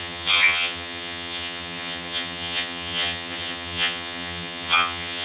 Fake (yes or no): yes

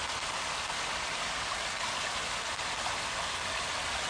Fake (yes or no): no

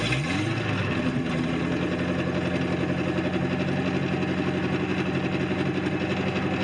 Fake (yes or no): no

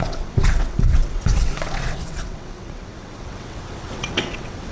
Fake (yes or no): yes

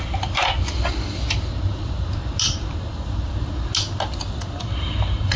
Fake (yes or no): no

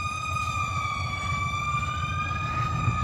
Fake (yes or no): no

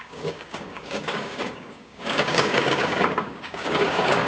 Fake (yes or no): yes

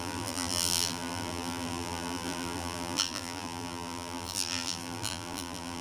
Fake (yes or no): yes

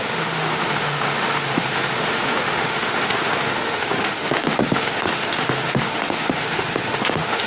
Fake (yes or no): yes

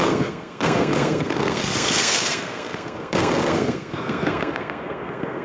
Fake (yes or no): yes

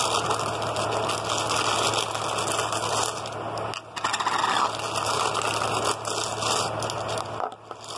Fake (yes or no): no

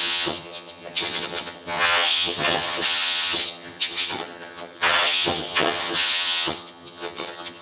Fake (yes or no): yes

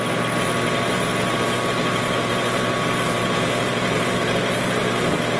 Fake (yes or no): no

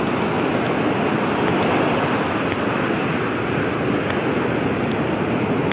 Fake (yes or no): no